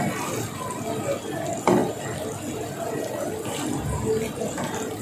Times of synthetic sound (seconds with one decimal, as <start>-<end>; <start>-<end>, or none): none